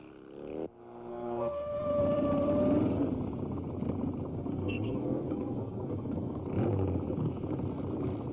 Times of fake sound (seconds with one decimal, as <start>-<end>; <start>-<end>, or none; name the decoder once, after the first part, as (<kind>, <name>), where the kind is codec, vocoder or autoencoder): 1.1-2.0 (codec, SNAC); 4.3-6.4